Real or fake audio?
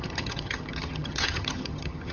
fake